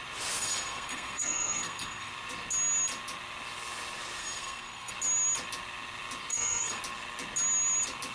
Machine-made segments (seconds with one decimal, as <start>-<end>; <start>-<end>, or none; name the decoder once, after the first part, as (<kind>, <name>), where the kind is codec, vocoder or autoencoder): 0.4-2.1 (codec, SNAC); 4.2-4.9; 6.3-6.8